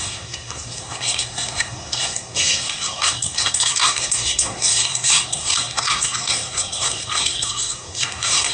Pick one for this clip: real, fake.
fake